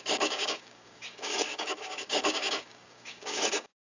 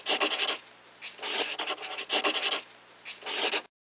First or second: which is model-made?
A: first